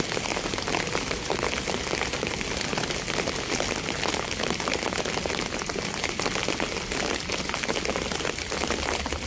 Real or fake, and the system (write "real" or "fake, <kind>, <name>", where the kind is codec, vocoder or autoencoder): real